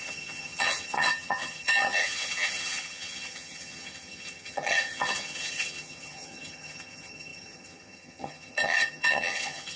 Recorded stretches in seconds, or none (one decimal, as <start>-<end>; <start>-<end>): none